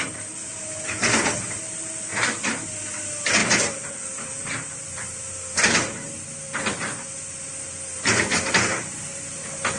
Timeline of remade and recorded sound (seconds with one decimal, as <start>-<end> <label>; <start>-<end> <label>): 0.0-9.8 recorded